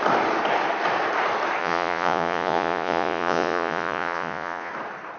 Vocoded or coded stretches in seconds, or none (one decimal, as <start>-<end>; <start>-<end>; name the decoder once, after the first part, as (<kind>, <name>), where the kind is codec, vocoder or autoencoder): 1.6-4.7 (vocoder, Vocos)